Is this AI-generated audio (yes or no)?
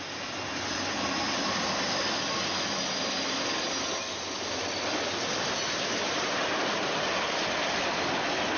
no